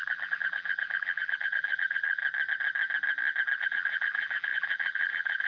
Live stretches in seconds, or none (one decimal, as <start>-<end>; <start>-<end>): 2.2-3.6